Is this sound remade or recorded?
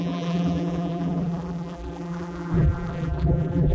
remade